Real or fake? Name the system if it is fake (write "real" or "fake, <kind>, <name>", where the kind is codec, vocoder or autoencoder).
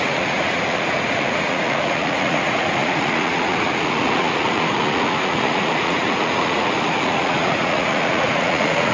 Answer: fake, vocoder, Vocos